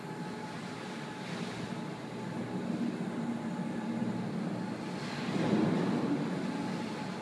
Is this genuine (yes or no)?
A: yes